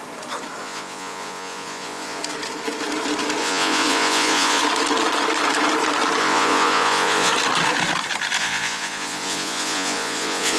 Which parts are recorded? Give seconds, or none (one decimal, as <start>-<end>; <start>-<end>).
0.0-0.6; 2.2-3.4; 4.6-6.2; 7.3-8.4